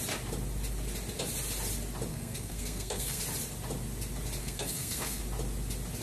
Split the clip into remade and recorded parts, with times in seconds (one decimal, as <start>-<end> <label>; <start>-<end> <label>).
0.0-2.1 recorded; 2.1-3.2 remade; 3.2-4.4 recorded; 4.4-5.2 remade; 5.2-6.0 recorded